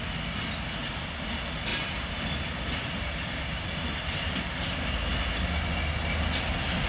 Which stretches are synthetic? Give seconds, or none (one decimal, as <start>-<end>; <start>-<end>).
1.7-4.8